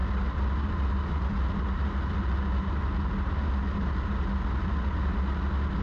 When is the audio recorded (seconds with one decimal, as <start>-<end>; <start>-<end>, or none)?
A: 0.0-5.8